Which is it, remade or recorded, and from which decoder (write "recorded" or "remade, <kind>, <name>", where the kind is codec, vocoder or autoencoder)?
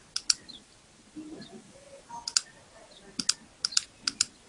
recorded